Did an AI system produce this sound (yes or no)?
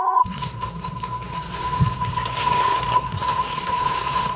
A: yes